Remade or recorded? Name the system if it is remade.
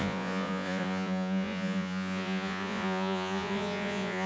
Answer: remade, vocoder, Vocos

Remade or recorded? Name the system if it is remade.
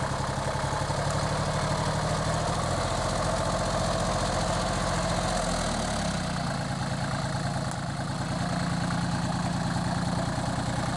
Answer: recorded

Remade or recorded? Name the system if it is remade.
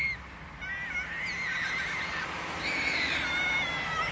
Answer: recorded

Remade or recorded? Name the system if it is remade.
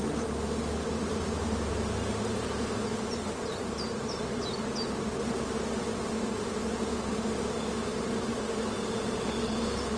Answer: recorded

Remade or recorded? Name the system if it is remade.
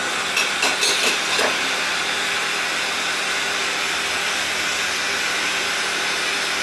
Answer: recorded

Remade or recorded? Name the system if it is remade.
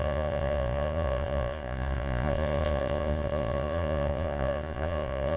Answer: remade, vocoder, Vocos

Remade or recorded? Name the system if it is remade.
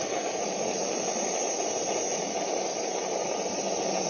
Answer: recorded